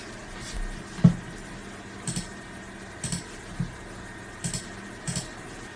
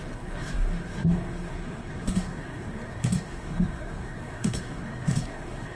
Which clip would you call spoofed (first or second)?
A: second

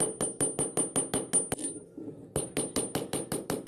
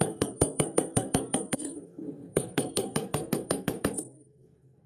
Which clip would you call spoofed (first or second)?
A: second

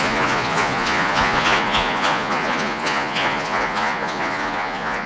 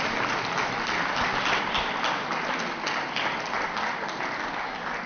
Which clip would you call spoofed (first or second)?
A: first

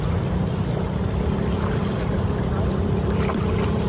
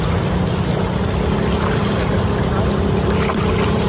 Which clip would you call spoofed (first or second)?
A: first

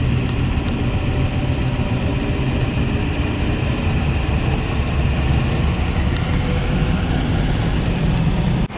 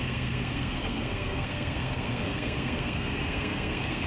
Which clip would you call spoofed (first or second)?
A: second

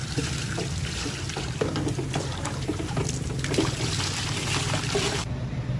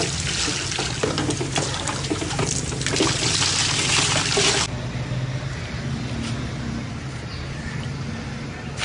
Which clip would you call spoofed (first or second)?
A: first